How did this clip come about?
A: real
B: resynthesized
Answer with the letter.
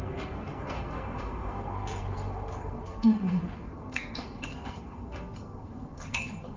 B